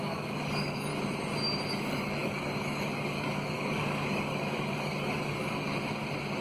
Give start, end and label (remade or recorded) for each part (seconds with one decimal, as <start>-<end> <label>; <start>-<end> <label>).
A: 0.0-0.9 remade; 0.9-1.7 recorded; 1.7-5.7 remade; 5.7-6.4 recorded